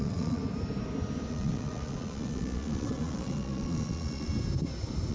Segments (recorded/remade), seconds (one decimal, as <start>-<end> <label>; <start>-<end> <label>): 0.0-0.4 remade; 0.4-1.3 recorded; 1.3-4.3 remade; 4.3-5.1 recorded